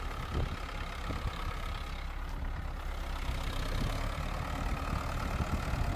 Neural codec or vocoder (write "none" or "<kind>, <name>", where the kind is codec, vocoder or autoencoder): none